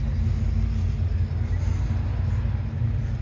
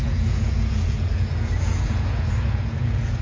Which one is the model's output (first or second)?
second